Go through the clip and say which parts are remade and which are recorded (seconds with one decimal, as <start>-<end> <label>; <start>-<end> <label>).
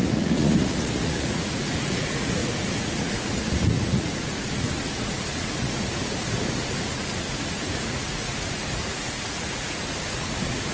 0.0-10.7 remade